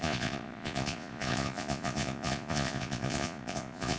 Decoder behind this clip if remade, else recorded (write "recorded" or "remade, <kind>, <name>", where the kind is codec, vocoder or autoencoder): remade, vocoder, Vocos